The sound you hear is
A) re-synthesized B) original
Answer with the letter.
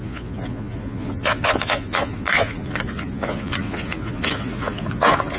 A